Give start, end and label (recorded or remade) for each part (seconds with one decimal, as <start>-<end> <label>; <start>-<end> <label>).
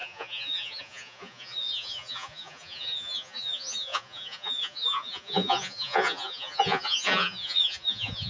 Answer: 0.0-8.3 remade